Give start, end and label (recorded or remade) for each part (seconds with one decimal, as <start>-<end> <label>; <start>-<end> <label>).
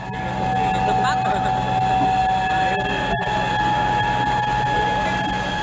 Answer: 0.0-5.6 recorded